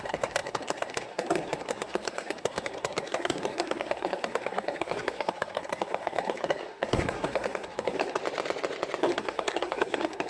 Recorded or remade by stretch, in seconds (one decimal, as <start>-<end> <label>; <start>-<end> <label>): 0.0-8.2 remade; 8.2-9.0 recorded; 9.0-10.3 remade